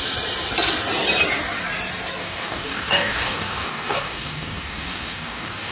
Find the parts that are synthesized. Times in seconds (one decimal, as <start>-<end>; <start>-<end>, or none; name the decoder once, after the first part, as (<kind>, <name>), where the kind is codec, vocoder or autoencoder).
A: 2.2-5.7 (codec, DAC)